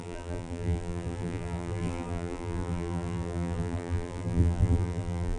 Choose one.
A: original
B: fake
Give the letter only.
B